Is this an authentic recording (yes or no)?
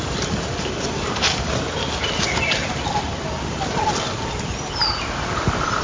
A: yes